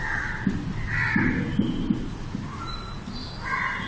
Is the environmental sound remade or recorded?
recorded